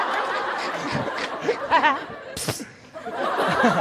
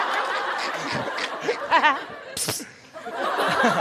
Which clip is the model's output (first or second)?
first